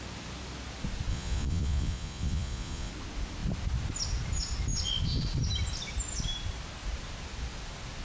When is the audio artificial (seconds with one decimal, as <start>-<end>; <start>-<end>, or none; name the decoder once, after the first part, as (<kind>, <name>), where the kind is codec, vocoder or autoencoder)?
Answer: 1.1-2.9 (vocoder, Vocos)